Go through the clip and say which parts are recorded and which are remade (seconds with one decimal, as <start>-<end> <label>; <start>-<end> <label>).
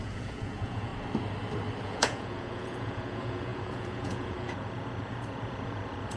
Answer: 0.0-0.9 remade; 0.9-1.8 recorded; 1.8-6.2 remade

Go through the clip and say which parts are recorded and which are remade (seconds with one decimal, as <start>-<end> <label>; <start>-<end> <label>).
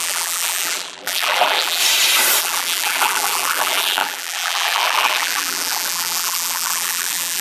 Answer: 0.0-1.8 remade; 1.8-2.4 recorded; 2.4-7.4 remade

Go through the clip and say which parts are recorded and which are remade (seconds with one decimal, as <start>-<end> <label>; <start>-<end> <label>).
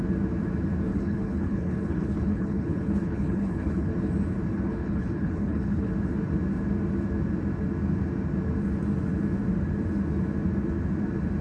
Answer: 0.0-0.9 recorded; 0.9-3.9 remade; 3.9-4.5 recorded; 4.5-5.9 remade; 5.9-11.4 recorded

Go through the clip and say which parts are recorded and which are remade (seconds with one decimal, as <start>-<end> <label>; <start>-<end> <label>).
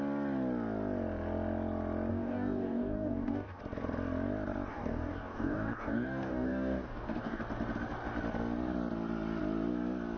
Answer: 0.0-2.1 recorded; 2.1-3.6 remade; 3.6-4.7 recorded; 4.7-7.4 remade; 7.4-10.2 recorded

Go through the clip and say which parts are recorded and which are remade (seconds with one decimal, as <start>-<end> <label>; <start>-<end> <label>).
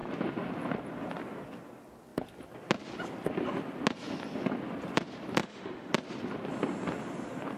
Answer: 0.0-5.4 recorded; 5.4-5.9 remade; 5.9-7.6 recorded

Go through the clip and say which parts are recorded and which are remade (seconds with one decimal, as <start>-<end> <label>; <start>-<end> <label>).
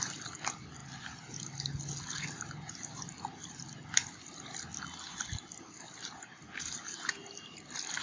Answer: 0.0-8.0 recorded